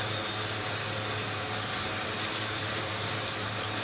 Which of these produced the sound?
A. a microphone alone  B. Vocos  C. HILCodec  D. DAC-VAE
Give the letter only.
A